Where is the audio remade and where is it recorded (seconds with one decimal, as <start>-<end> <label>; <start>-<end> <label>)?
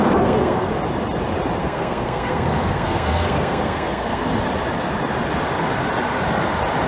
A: 0.0-0.7 remade; 0.7-1.6 recorded; 1.6-4.2 remade; 4.2-6.9 recorded